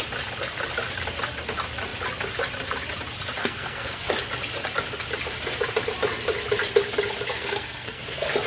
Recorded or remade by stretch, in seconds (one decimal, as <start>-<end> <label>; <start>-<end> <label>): 0.0-3.4 recorded; 3.4-4.1 remade; 4.1-7.3 recorded; 7.3-8.0 remade; 8.0-8.5 recorded